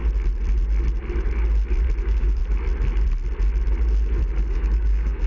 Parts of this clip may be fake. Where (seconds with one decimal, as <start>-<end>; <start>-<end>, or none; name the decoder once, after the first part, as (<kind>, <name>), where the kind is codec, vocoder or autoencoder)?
2.0-2.4 (codec, DAC); 4.5-5.3